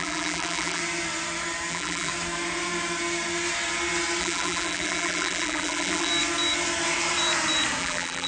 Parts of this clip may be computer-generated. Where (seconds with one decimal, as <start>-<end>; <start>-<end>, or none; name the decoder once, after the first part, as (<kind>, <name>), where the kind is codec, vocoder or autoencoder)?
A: 0.0-0.8 (vocoder, BigVGAN v2); 1.7-2.1; 4.2-6.1; 7.8-8.3